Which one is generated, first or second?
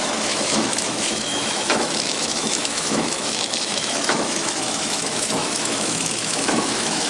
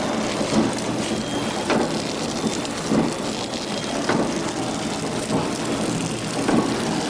first